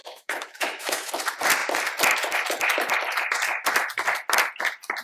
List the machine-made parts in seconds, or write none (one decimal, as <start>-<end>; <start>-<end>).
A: 0.0-1.1